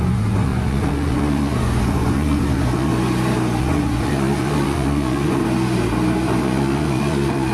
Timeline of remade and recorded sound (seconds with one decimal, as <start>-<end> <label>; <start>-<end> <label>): 0.0-2.9 remade; 2.9-3.6 recorded; 3.6-5.4 remade; 5.4-6.4 recorded; 6.4-7.5 remade